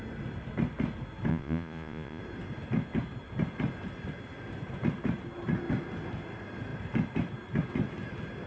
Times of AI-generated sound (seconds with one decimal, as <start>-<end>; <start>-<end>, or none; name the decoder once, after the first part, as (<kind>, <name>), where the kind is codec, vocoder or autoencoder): 1.3-2.2 (vocoder, Vocos)